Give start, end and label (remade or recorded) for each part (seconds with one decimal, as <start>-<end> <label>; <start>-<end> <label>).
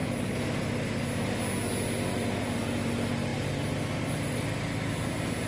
0.0-5.5 recorded